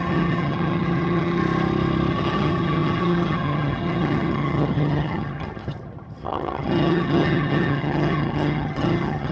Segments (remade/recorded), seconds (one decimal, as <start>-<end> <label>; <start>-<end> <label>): 0.0-1.4 remade; 1.4-2.1 recorded; 2.1-9.3 remade